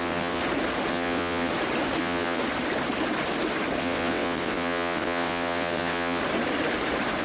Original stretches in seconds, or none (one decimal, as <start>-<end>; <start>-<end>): 0.4-0.9; 1.5-2.0; 2.4-3.8; 6.2-7.2